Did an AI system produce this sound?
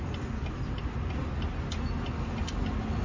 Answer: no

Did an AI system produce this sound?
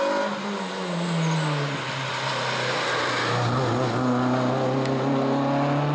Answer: no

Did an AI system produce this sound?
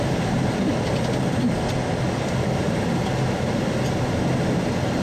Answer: no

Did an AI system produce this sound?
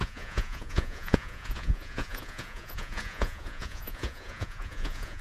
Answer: yes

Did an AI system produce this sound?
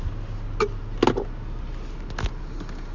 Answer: no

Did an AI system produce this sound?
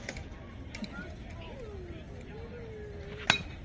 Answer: no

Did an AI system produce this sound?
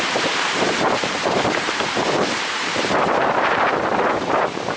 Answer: yes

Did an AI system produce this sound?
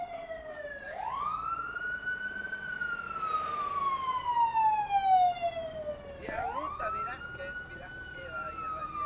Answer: no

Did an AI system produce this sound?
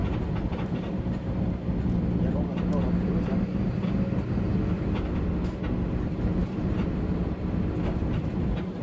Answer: no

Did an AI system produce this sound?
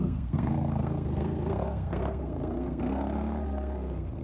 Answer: yes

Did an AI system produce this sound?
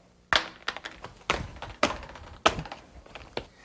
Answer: no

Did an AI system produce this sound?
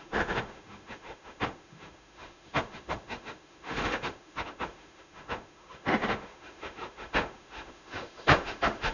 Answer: yes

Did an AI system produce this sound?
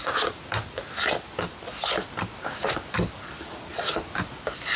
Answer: no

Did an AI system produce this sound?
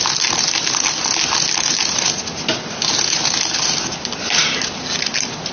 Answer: no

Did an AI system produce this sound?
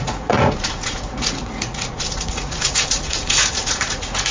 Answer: yes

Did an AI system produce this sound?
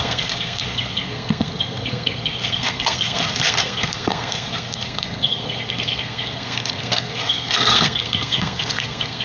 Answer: yes